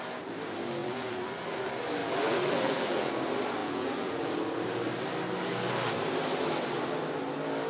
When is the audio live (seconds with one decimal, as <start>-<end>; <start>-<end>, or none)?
0.0-0.8; 1.3-2.0; 3.1-3.6; 4.3-7.7